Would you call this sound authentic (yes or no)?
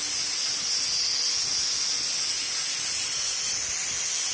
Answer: yes